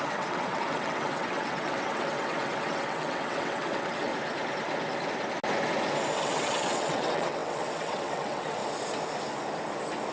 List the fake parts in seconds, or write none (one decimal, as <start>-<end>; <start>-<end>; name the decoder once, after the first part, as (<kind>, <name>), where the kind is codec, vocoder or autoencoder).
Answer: 0.0-4.1 (vocoder, WaveNeXt); 6.2-8.6